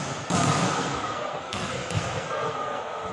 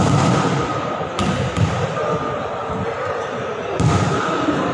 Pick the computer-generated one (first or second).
first